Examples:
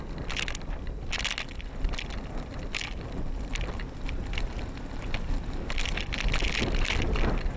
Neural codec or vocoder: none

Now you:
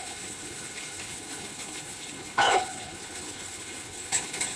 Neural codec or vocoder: codec, HILCodec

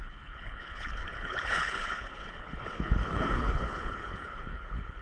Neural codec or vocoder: codec, HILCodec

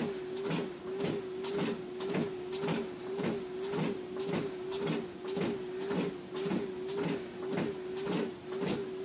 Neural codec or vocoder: none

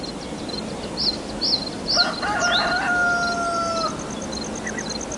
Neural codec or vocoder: none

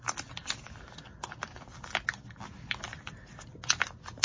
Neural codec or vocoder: none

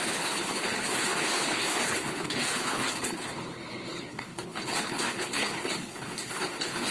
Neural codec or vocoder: codec, HILCodec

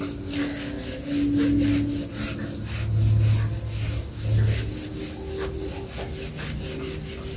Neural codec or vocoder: none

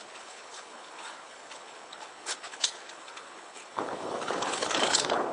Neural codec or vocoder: codec, HILCodec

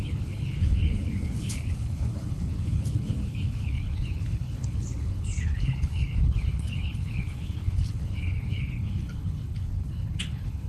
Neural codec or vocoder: codec, HILCodec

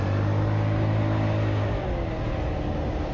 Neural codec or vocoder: none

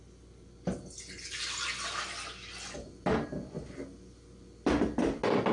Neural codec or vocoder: none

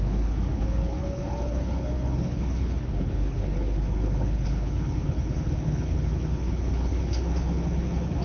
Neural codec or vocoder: codec, HILCodec